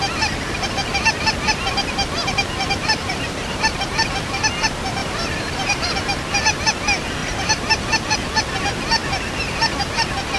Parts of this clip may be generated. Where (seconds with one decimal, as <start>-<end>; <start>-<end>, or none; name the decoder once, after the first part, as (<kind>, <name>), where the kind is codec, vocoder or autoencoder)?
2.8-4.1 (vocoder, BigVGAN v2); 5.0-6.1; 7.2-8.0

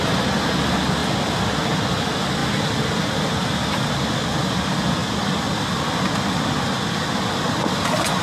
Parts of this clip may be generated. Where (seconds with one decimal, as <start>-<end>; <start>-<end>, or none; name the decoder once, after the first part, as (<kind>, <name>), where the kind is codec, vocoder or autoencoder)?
2.4-3.9 (vocoder, BigVGAN v2)

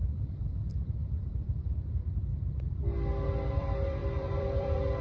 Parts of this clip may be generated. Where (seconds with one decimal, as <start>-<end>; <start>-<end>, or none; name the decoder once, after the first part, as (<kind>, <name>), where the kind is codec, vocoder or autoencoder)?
0.0-2.3 (vocoder, BigVGAN v2); 3.5-5.0

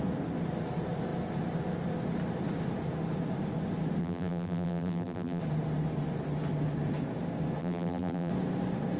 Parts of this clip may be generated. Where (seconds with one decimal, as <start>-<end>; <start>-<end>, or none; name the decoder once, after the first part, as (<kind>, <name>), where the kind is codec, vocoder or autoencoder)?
4.0-5.4 (vocoder, BigVGAN v2); 7.6-8.3

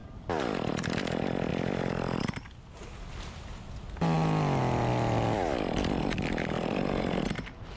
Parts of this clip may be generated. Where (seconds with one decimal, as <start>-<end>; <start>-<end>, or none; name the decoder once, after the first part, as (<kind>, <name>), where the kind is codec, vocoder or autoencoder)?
0.0-1.5 (vocoder, BigVGAN v2); 5.9-7.8